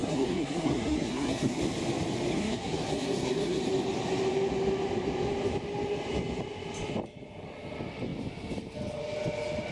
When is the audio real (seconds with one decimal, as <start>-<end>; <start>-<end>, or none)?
1.6-2.3; 3.6-9.7